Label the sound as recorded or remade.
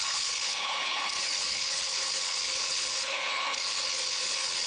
remade